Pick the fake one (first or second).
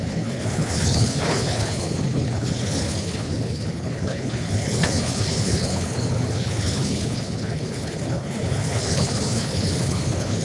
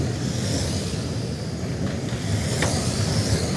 first